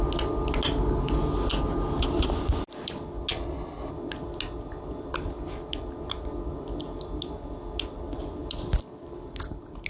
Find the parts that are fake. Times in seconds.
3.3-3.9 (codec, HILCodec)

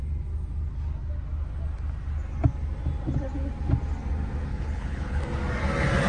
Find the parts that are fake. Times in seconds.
4.5-5.2 (codec, HILCodec)

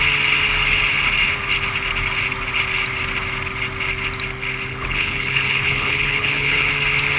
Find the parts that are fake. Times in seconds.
4.7-6.7 (codec, HILCodec)